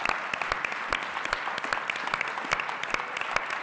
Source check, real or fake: real